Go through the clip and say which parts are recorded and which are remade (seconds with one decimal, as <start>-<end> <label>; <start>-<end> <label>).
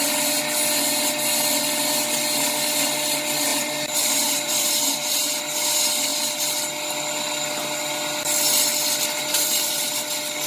0.0-3.5 recorded; 3.5-5.4 remade; 5.4-9.2 recorded; 9.2-9.9 remade; 9.9-10.5 recorded